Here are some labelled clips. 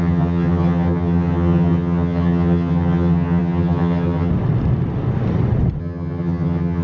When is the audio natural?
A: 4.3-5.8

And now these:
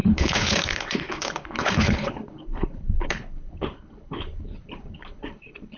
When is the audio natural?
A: none

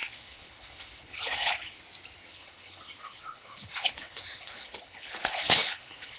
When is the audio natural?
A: 1.8-2.3

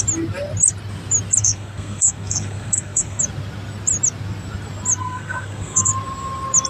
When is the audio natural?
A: 0.0-1.4; 3.2-5.0; 5.9-6.7

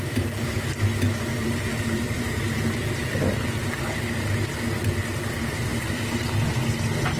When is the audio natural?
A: 0.0-1.3; 3.4-7.2

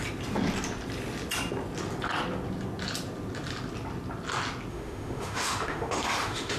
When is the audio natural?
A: 0.0-4.7